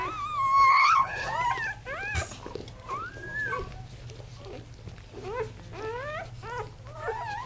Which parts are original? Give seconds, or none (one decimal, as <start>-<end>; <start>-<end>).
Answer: 0.0-0.7; 1.3-7.5